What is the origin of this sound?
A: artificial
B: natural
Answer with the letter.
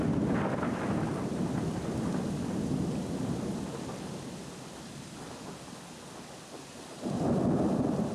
B